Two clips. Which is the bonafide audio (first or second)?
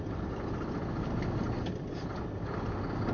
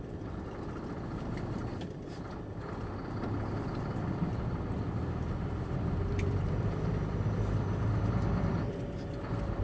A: first